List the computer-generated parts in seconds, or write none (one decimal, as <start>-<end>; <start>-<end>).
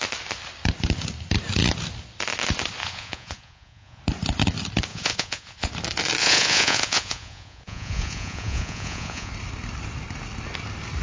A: 2.8-4.0; 4.9-5.7; 6.2-9.3